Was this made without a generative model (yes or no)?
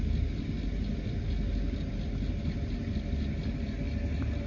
yes